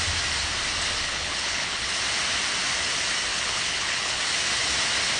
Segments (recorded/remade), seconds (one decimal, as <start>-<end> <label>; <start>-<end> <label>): 0.0-1.1 recorded; 1.1-1.9 remade; 1.9-3.3 recorded; 3.3-4.2 remade; 4.2-5.2 recorded